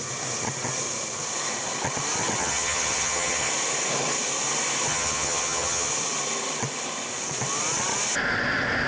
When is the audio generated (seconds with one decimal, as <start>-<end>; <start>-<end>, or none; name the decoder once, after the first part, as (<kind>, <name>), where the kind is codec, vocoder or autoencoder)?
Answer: 2.4-3.5 (vocoder, HiFi-GAN); 4.9-5.9